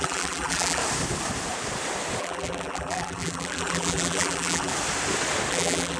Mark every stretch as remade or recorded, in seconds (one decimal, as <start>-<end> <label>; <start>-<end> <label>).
0.0-0.8 remade; 0.8-2.2 recorded; 2.2-4.7 remade; 4.7-5.5 recorded; 5.5-6.0 remade